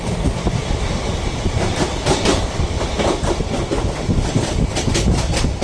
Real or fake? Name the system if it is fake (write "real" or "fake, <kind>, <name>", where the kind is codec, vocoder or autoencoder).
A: real